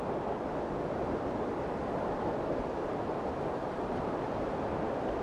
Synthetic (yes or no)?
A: no